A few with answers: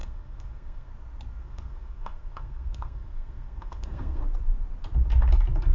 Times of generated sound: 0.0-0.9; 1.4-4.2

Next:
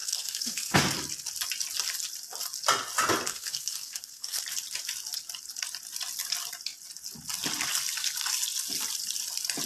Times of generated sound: 0.0-0.8; 3.3-4.4

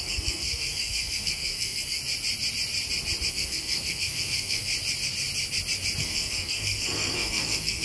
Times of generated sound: 0.0-2.0; 3.3-4.7; 6.0-7.8

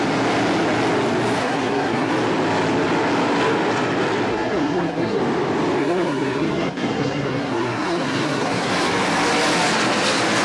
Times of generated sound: 1.4-2.1; 4.3-5.2; 5.8-8.7

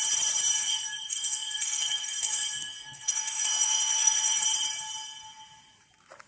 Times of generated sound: 0.6-4.4

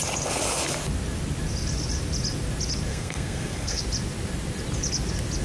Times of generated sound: 2.9-3.8

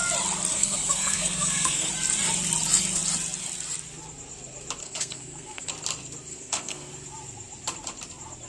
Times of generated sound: 0.5-1.9; 4.8-5.7; 6.3-6.9